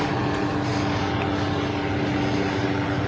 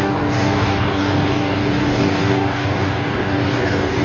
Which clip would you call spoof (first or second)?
second